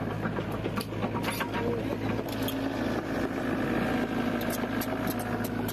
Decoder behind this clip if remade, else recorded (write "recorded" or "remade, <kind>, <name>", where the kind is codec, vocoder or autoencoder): recorded